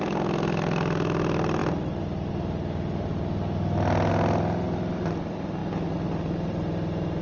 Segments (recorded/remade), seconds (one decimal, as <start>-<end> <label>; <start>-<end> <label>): 0.0-7.2 recorded